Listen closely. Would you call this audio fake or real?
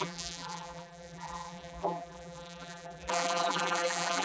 fake